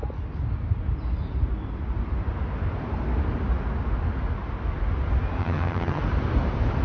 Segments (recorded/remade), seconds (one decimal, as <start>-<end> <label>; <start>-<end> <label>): 0.0-5.4 recorded; 5.4-6.0 remade; 6.0-6.8 recorded